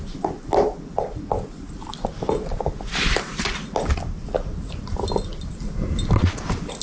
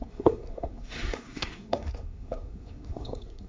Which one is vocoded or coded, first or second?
second